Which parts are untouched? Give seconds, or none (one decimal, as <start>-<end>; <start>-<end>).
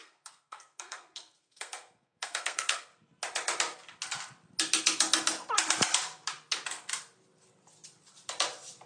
2.9-8.9